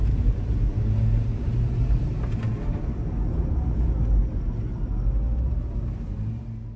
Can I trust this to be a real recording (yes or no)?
yes